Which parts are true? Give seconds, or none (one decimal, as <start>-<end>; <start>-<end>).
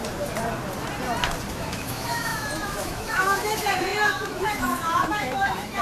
0.0-1.5